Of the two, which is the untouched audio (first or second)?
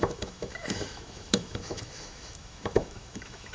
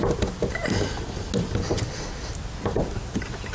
second